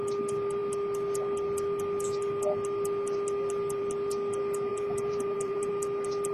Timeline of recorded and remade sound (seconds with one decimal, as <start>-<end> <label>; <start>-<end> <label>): 0.0-4.7 recorded; 4.7-5.7 remade; 5.7-6.3 recorded